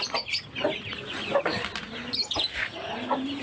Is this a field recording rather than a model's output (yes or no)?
yes